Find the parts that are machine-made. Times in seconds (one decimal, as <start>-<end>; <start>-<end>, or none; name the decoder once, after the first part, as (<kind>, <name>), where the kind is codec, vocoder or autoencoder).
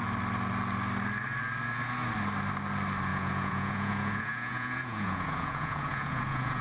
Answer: 3.1-6.6 (vocoder, Vocos)